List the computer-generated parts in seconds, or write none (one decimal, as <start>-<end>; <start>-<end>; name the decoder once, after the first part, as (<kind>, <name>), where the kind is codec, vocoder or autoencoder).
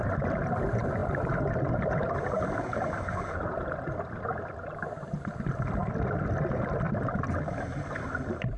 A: 0.0-5.8 (vocoder, BigVGAN v2); 6.4-8.6